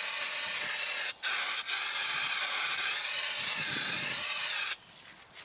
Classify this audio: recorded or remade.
recorded